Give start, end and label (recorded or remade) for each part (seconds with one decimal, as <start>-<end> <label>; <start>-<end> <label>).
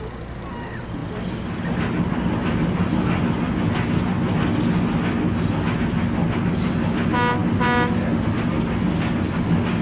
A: 0.0-9.8 recorded